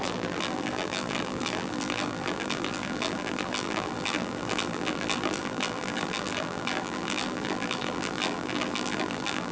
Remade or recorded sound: remade